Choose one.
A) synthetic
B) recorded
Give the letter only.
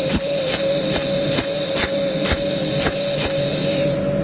A